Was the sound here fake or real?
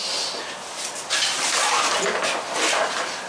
real